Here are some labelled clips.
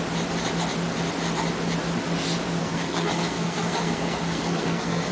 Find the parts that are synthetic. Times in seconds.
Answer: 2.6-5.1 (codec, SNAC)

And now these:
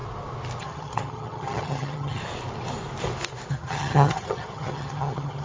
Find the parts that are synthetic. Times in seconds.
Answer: 0.6-2.2 (vocoder, HiFi-GAN); 3.5-5.4

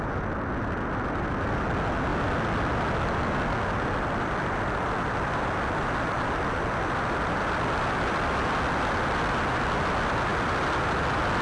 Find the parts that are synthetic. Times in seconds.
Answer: none

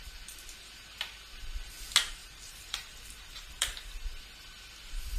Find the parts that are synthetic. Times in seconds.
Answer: 2.2-3.9 (vocoder, BigVGAN v2)